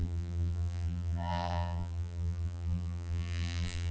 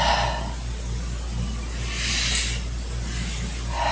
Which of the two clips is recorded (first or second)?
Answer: second